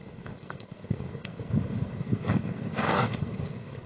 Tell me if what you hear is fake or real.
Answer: fake